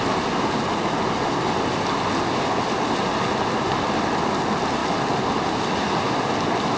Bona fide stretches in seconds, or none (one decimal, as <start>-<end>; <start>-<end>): 0.0-6.8